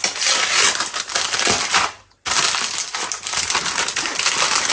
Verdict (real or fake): real